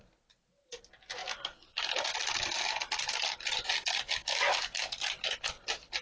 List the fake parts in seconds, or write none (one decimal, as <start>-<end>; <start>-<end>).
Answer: none